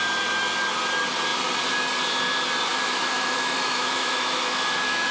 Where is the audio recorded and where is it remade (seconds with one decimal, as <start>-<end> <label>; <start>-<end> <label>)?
0.0-2.7 recorded; 2.7-5.1 remade